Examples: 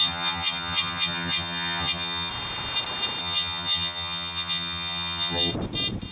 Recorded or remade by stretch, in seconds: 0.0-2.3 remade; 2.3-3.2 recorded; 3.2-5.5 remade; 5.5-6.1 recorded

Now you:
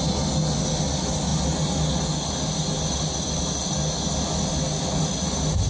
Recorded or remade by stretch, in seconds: 0.0-5.7 recorded

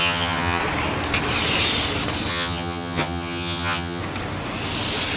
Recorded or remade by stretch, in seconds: 0.0-0.6 remade; 0.6-2.3 recorded; 2.3-4.0 remade; 4.0-5.2 recorded

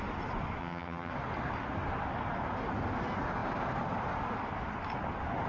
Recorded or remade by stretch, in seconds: 0.0-0.6 recorded; 0.6-1.1 remade; 1.1-5.5 recorded

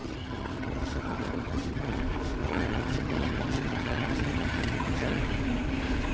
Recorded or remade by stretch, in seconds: 0.0-2.0 remade; 2.0-2.4 recorded; 2.4-5.2 remade; 5.2-6.1 recorded